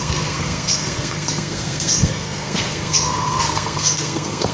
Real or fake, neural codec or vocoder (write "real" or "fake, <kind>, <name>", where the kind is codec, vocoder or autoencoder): fake, codec, SNAC